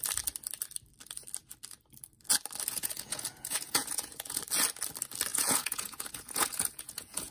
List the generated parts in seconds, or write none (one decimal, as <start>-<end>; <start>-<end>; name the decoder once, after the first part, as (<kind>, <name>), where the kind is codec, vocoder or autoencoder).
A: 2.7-4.4 (vocoder, Vocos); 5.3-7.3